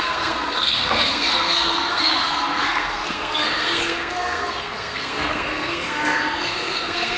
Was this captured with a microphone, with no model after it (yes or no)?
no